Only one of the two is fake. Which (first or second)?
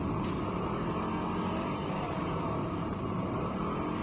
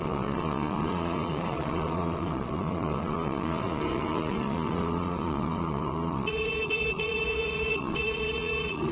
second